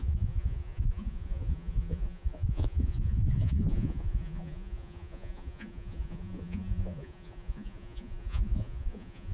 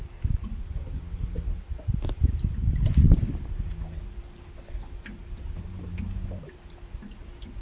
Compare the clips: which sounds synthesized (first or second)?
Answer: first